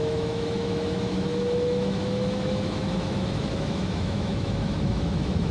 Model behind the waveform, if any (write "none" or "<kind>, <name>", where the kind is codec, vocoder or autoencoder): autoencoder, DAC-VAE